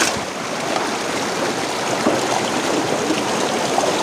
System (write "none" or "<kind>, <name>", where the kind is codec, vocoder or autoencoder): none